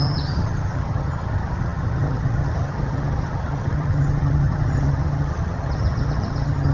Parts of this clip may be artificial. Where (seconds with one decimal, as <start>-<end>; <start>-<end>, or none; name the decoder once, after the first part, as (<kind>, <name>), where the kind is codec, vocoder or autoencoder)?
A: 0.0-6.7 (vocoder, HiFi-GAN)